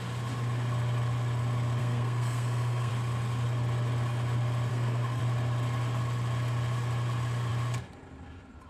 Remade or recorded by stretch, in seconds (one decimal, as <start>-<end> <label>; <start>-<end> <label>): 0.0-1.8 recorded; 1.8-2.9 remade; 2.9-4.7 recorded; 4.7-5.2 remade; 5.2-8.7 recorded